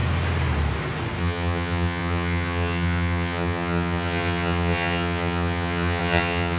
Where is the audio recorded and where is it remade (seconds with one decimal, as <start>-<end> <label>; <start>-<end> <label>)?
0.0-1.2 recorded; 1.2-6.6 remade